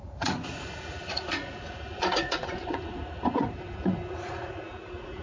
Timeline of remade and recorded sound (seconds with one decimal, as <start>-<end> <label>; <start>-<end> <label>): 0.0-5.2 remade